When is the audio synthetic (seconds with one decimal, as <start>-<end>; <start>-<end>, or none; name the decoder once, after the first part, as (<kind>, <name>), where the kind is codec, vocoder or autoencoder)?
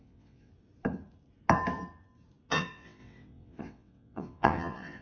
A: 0.0-0.5 (vocoder, WaveNeXt); 2.5-5.0